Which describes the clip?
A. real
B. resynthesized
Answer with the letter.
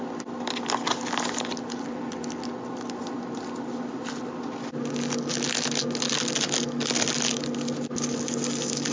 A